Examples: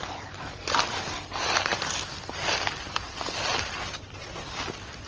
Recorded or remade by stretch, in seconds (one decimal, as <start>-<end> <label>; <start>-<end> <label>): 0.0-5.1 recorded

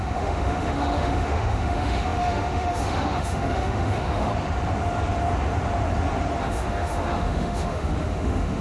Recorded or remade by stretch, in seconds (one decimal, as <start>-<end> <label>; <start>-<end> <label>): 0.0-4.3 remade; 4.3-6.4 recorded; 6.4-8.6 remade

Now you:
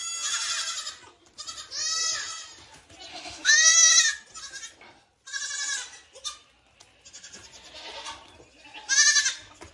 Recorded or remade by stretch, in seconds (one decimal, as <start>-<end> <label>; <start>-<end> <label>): 0.0-3.1 recorded; 3.1-3.9 remade; 3.9-9.7 recorded

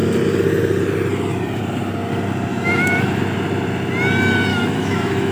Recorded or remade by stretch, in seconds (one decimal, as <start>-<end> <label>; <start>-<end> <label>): 0.0-2.5 recorded; 2.5-3.2 remade; 3.2-4.5 recorded; 4.5-5.3 remade